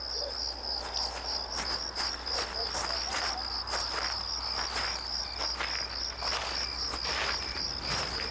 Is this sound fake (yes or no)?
no